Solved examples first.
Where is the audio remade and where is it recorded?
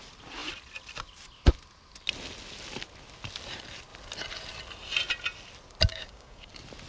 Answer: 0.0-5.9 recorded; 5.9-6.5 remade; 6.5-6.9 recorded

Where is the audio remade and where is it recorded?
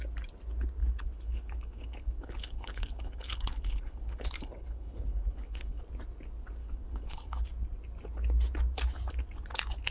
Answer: 0.0-0.8 recorded; 0.8-5.8 remade; 5.8-6.6 recorded; 6.6-7.4 remade; 7.4-9.9 recorded